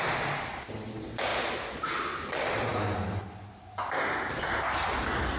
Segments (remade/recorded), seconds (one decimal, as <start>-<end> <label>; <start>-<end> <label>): 0.0-5.4 recorded

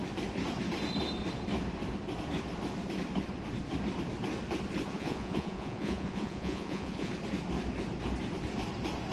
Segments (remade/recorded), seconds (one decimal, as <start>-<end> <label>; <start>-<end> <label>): 0.0-4.9 recorded; 4.9-7.1 remade; 7.1-9.1 recorded

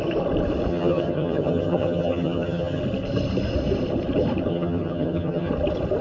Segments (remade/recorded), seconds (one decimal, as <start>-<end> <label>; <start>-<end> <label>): 0.0-0.7 recorded; 0.7-2.8 remade; 2.8-4.5 recorded; 4.5-5.5 remade; 5.5-6.0 recorded

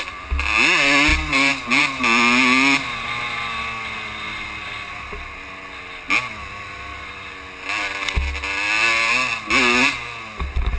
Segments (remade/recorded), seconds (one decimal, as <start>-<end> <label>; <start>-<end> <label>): 0.0-10.8 recorded

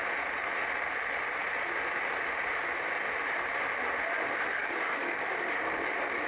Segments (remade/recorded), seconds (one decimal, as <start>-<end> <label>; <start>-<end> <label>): 0.0-4.6 recorded; 4.6-5.8 remade; 5.8-6.3 recorded